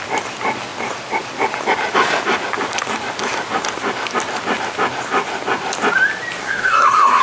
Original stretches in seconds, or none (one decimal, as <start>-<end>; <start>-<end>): 0.0-6.4